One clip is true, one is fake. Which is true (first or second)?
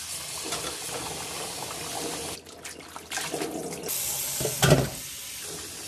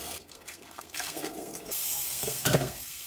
first